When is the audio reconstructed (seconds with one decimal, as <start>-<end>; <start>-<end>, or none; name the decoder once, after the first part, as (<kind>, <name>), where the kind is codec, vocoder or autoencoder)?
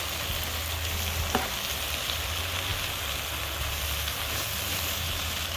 none